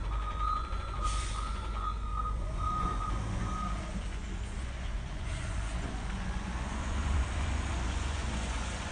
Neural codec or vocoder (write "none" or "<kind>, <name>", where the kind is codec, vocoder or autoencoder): vocoder, Vocos